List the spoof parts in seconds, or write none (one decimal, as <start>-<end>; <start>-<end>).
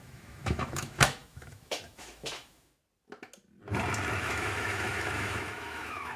0.0-2.8; 4.2-6.2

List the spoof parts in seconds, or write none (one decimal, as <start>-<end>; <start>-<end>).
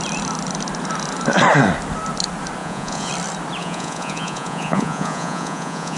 2.6-3.1; 3.6-6.0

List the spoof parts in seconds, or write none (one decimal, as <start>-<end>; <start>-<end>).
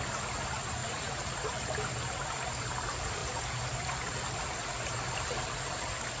0.8-1.3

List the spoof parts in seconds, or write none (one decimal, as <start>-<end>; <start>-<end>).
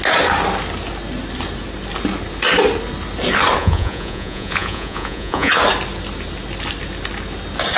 3.6-5.5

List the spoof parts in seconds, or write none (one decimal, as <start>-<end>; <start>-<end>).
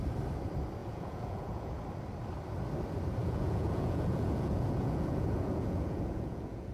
0.8-1.7; 3.2-6.7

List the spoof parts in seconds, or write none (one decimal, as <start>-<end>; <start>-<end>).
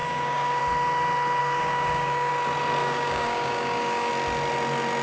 0.0-0.6; 1.4-2.3; 2.8-4.1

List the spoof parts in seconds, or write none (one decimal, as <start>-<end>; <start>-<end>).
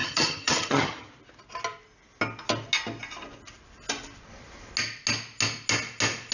0.0-1.1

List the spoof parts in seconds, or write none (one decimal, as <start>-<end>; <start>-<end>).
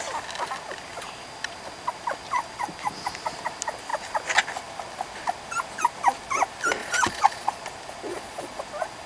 6.8-7.6; 8.1-8.6